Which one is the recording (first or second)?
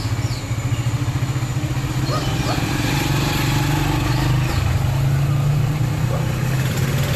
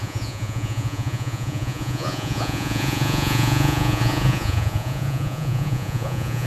first